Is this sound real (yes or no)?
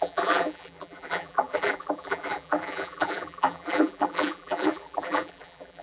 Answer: no